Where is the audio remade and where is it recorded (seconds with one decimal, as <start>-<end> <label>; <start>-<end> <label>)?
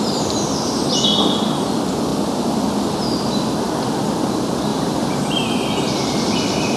0.0-4.7 recorded; 4.7-5.5 remade; 5.5-6.8 recorded